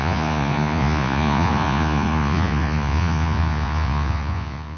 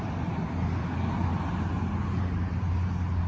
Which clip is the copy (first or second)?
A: first